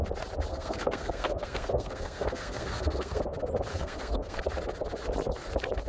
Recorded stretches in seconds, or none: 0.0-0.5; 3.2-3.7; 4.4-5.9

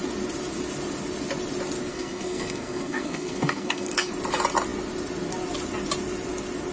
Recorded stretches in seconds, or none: 0.0-1.9; 4.1-6.7

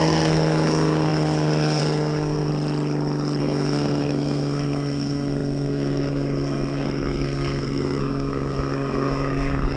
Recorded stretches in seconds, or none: 2.5-3.4

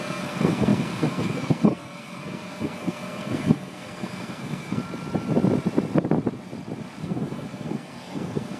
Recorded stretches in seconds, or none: 4.8-7.0

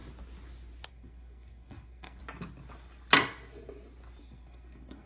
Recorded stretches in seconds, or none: 0.0-0.9; 2.2-4.2

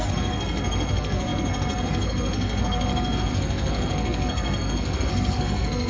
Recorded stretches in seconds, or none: none

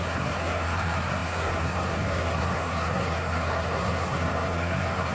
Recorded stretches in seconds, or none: none